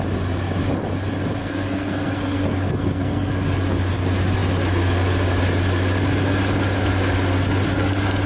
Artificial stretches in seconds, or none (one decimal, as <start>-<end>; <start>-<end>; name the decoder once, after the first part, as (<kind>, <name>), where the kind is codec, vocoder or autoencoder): 1.4-3.3 (codec, SNAC)